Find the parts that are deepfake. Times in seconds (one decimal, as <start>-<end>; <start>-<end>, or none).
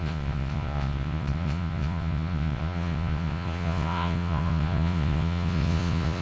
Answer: 0.0-6.2